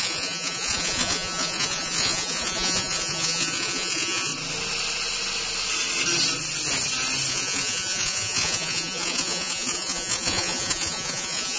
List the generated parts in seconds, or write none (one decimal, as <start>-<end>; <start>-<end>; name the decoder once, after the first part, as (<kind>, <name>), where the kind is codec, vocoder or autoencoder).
0.0-4.3 (vocoder, Vocos); 7.3-11.6